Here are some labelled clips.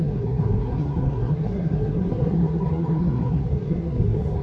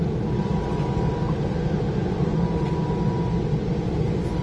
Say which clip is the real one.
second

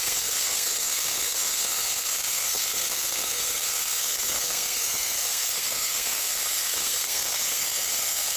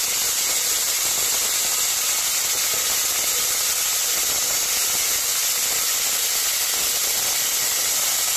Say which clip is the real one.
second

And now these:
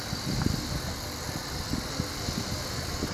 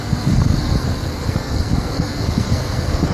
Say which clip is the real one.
first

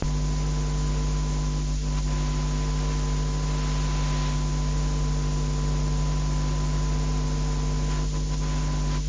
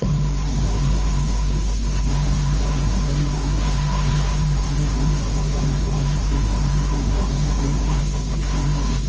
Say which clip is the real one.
first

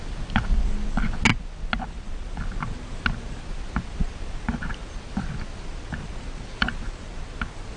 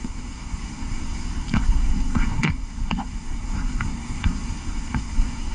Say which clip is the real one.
first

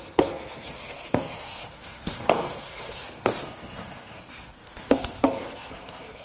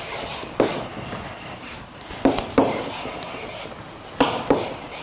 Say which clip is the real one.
second